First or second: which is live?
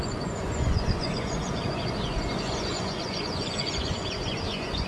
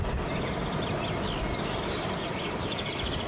second